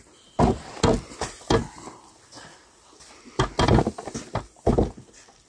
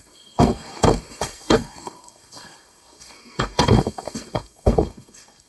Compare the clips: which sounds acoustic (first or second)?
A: first